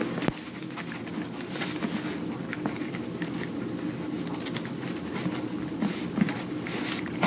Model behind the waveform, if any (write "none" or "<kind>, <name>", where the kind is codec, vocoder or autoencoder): none